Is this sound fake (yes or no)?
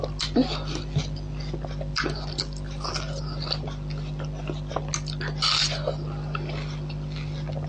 no